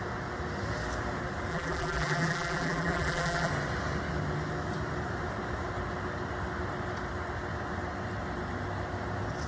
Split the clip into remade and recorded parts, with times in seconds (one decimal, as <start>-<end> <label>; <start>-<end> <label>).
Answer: 0.0-1.5 recorded; 1.5-3.5 remade; 3.5-9.5 recorded